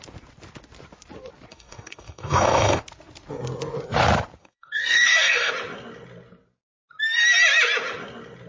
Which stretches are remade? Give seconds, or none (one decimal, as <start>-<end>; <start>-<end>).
1.5-2.8; 4.4-5.5